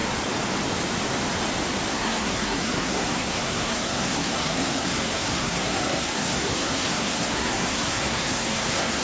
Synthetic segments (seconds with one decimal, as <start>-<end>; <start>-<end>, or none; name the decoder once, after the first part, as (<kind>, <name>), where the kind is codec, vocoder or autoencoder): 1.9-9.0 (codec, SNAC)